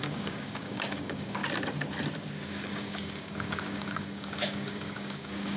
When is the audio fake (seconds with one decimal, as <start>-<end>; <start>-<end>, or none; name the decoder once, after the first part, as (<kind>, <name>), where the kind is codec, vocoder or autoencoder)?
0.0-1.4 (codec, DAC); 2.5-5.6